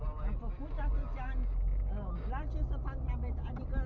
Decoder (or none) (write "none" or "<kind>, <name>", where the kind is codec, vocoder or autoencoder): none